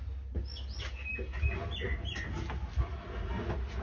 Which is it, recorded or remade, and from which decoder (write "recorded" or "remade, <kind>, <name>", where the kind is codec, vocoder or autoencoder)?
recorded